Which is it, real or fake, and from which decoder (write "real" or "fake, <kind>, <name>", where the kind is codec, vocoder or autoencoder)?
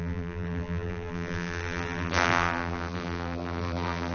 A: fake, vocoder, BigVGAN v2